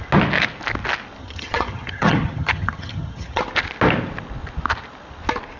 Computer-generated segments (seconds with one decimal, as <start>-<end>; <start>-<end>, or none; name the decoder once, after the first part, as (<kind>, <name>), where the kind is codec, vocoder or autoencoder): 1.2-3.4 (vocoder, HiFi-GAN)